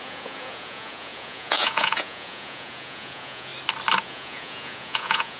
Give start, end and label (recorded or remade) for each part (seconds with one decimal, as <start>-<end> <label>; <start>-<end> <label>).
0.0-3.5 remade; 3.5-4.0 recorded; 4.0-5.4 remade